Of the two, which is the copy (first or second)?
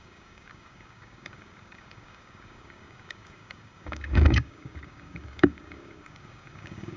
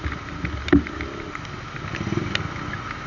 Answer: first